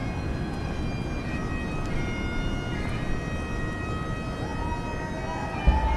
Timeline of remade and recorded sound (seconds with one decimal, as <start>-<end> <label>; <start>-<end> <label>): 0.0-6.0 recorded